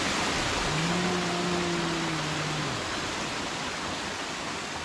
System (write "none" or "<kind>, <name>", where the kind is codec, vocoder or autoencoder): none